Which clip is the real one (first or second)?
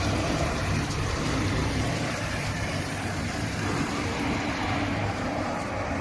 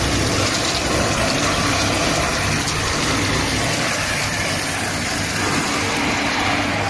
second